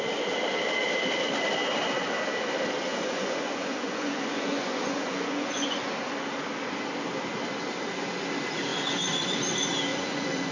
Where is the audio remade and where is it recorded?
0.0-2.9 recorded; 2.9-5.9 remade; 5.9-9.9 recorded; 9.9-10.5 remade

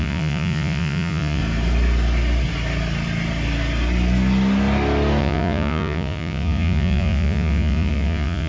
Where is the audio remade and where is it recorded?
0.0-1.4 remade; 1.4-5.2 recorded; 5.2-8.5 remade

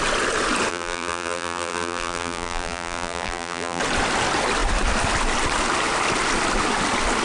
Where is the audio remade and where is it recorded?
0.0-0.7 recorded; 0.7-3.8 remade; 3.8-7.2 recorded

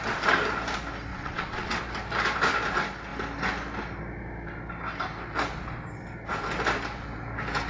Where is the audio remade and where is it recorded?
0.0-1.1 recorded; 1.1-1.8 remade; 1.8-7.7 recorded